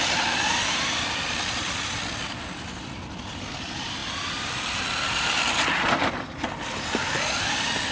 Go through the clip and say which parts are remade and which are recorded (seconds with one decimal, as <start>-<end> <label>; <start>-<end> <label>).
0.0-7.9 recorded